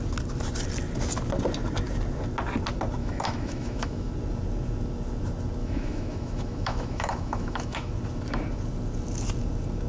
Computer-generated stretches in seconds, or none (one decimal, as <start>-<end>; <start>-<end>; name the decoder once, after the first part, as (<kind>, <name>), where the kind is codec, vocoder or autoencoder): 3.0-4.1 (autoencoder, DAC-VAE); 5.6-7.9